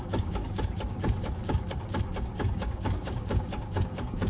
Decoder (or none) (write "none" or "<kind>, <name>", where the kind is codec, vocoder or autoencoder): codec, DAC